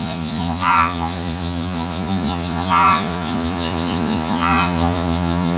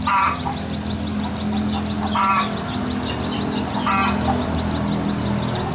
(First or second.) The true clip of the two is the second